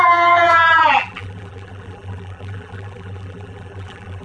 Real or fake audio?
fake